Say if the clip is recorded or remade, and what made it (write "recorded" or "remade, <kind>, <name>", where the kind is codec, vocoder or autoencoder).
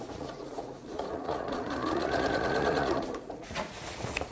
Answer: remade, vocoder, Vocos